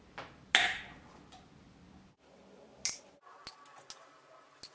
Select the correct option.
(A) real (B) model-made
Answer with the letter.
A